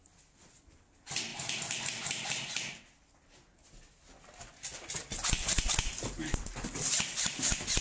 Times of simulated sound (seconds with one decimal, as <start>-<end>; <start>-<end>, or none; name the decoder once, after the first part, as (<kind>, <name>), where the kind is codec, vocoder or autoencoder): none

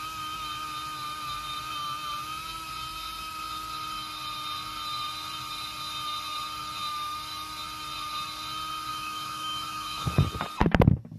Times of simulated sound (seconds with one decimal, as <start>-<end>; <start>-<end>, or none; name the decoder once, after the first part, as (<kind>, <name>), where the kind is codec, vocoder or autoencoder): 8.9-10.1 (autoencoder, DAC-VAE)

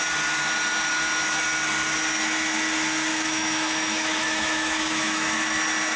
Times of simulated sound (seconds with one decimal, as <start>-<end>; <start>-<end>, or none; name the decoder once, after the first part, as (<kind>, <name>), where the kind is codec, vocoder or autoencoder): 3.1-5.6 (autoencoder, DAC-VAE)

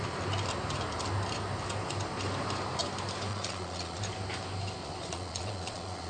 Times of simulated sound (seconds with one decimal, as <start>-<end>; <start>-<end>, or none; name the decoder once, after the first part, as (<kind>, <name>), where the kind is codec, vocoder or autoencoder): 3.3-4.0 (vocoder, Vocos); 4.8-6.1

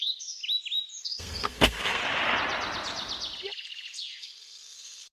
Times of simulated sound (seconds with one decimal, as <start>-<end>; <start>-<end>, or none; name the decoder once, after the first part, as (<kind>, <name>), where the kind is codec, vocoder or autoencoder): 0.0-0.4 (codec, SNAC); 1.0-2.0; 4.2-5.1

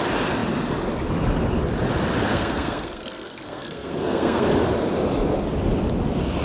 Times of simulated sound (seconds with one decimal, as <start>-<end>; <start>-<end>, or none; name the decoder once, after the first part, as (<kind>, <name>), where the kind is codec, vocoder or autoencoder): 2.3-4.5 (codec, SNAC)